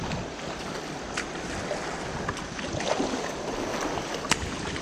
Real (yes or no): yes